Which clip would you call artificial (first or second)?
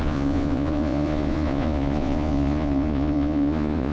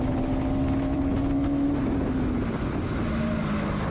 first